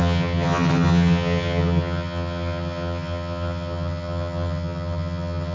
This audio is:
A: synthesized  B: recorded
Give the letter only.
A